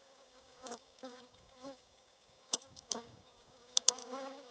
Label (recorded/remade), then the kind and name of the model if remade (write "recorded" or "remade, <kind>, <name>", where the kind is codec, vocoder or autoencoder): remade, codec, DAC